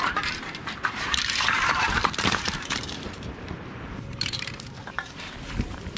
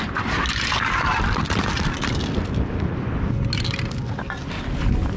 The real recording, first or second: second